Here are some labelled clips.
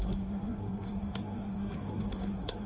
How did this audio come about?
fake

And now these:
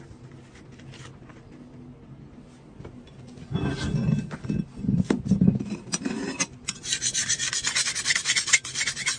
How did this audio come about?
real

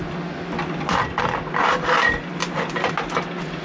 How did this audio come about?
real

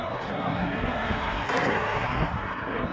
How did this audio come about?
fake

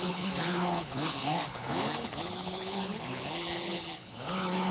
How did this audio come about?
fake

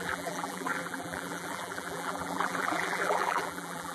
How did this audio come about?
fake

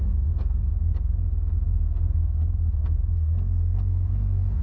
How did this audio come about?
fake